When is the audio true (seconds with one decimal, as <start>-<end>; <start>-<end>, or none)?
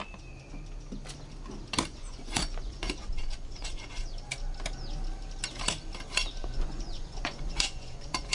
0.0-1.9; 4.0-6.4